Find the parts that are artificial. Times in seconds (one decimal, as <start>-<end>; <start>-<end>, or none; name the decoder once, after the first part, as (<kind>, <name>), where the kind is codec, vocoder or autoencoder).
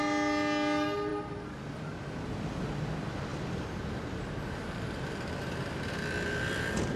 none